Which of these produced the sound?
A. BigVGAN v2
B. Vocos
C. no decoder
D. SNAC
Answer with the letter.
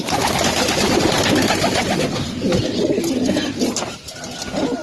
C